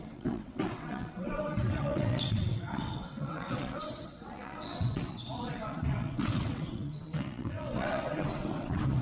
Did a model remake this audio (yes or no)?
yes